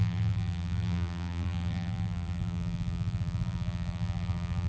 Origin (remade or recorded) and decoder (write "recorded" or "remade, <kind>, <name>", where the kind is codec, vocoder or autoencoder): remade, vocoder, BigVGAN v2